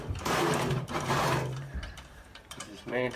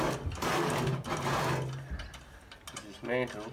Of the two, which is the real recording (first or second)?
second